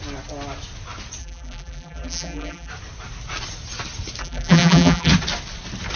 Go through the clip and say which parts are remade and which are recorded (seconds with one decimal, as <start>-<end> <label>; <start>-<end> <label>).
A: 0.0-1.2 recorded; 1.2-2.7 remade; 2.7-4.2 recorded; 4.2-5.1 remade; 5.1-6.0 recorded